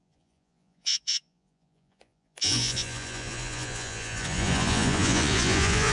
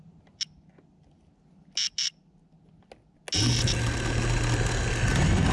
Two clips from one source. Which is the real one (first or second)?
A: second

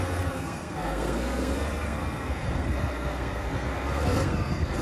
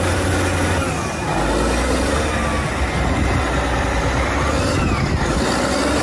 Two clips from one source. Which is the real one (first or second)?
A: second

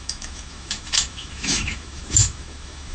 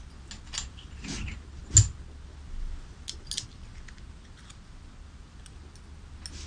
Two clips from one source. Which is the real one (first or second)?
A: second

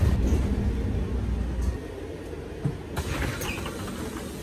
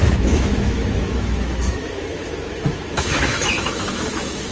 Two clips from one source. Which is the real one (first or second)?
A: first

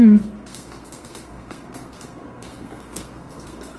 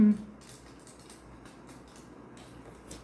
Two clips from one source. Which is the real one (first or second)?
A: second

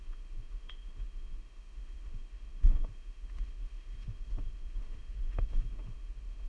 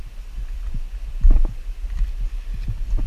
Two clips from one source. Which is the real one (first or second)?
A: second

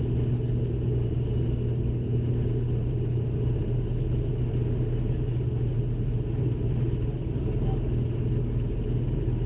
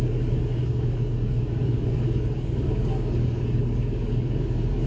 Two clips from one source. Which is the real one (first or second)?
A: first